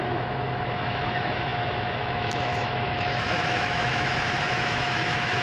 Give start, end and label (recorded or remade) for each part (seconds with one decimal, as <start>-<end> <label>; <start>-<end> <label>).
0.0-5.4 remade